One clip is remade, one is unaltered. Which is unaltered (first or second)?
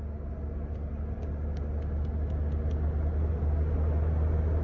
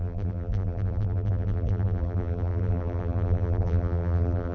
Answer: first